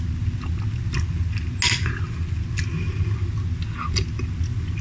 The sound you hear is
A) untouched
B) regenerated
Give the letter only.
A